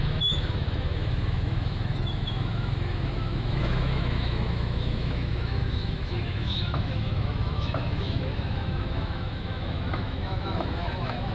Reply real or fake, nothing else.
fake